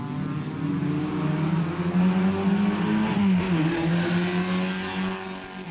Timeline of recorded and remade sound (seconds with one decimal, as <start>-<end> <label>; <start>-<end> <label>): 0.0-3.2 recorded; 3.2-3.9 remade; 3.9-5.7 recorded